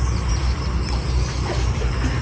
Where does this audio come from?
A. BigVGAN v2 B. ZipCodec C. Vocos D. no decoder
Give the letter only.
A